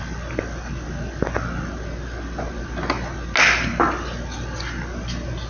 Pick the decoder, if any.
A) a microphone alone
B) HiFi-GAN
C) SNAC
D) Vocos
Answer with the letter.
A